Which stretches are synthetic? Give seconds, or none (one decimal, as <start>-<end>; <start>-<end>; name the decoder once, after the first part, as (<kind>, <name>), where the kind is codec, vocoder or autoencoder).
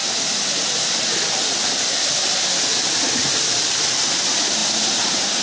none